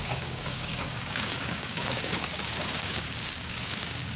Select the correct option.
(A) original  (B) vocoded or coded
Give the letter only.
B